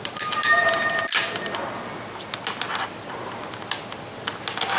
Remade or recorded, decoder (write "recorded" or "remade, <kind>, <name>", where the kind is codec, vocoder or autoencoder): recorded